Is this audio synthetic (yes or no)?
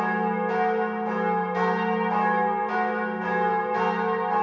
no